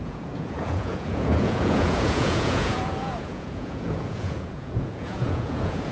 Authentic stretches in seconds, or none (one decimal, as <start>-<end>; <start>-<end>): none